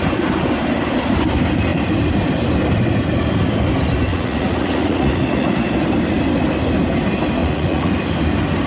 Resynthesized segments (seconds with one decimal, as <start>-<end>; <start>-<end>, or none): 4.1-5.7; 7.4-7.9